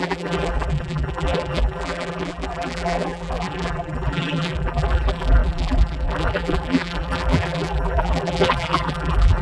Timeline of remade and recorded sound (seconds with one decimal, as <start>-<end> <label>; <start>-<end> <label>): 0.0-9.4 remade